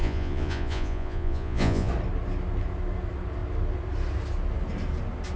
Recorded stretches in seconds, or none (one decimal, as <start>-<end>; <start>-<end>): 1.9-5.4